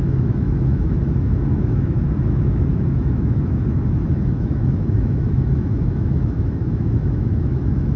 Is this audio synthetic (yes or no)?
yes